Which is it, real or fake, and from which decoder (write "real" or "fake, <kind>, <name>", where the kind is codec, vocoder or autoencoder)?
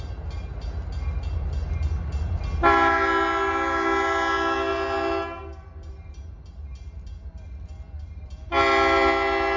real